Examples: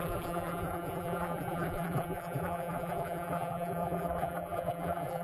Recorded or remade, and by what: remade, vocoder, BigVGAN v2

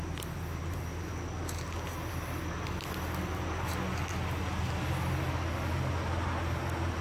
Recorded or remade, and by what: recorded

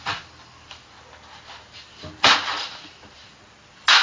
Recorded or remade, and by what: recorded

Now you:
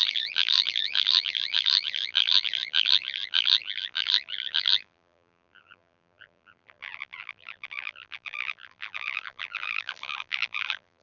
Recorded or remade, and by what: remade, vocoder, BigVGAN v2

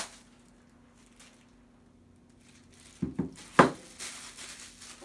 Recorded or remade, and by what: recorded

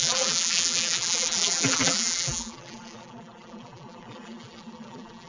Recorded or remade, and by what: remade, vocoder, BigVGAN v2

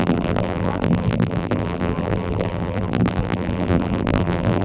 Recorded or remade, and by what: remade, vocoder, BigVGAN v2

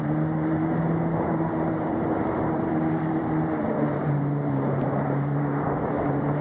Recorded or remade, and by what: remade, vocoder, BigVGAN v2